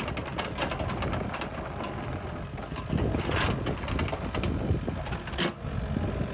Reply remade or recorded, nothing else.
recorded